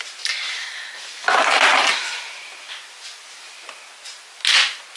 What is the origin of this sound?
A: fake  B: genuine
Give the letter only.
B